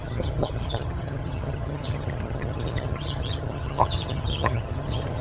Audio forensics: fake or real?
fake